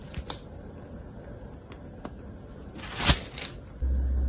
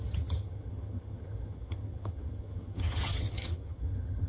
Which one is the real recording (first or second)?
first